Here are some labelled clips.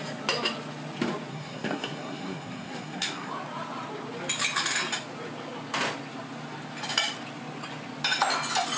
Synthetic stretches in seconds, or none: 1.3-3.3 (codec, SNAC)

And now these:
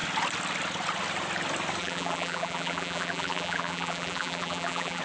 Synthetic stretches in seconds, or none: 1.8-5.0 (vocoder, BigVGAN v2)

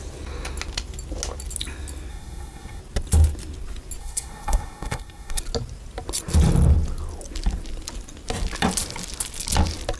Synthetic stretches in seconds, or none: 2.1-2.8 (codec, SNAC); 4.0-5.4

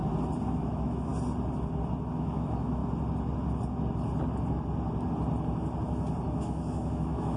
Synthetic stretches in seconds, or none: 0.5-1.1 (autoencoder, DAC-VAE); 2.1-2.8; 6.4-7.4

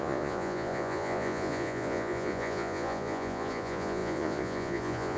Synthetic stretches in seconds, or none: 0.0-5.2 (vocoder, Vocos)

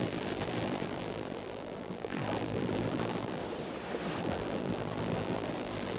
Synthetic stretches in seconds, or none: 0.0-3.4 (vocoder, BigVGAN v2); 4.2-6.0

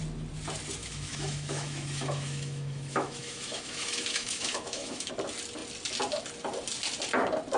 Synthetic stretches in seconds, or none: 0.8-5.1 (autoencoder, DAC-VAE)